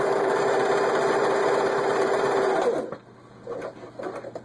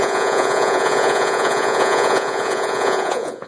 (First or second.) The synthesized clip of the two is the second